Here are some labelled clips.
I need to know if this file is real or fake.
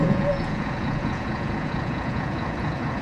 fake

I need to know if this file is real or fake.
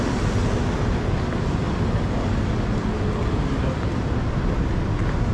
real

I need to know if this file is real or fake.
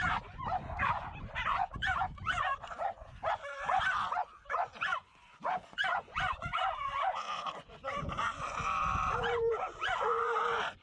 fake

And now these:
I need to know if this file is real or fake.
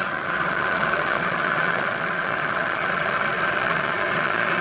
fake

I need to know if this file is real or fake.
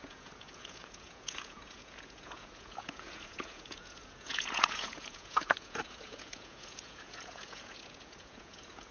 fake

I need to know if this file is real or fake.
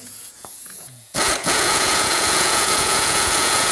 fake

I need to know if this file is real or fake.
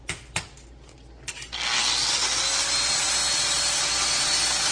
real